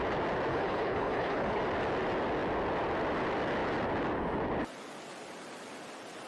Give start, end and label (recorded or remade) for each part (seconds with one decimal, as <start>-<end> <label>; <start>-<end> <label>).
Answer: 0.0-0.5 recorded; 0.5-1.6 remade; 1.6-6.3 recorded